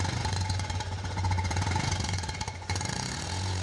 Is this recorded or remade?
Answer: remade